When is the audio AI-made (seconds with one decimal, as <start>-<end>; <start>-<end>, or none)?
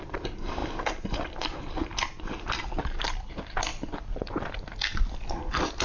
none